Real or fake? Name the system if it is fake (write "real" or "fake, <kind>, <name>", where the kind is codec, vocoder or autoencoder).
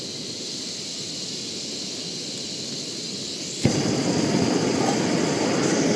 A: real